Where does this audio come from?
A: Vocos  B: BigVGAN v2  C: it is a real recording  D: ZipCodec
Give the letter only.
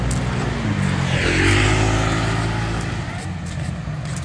C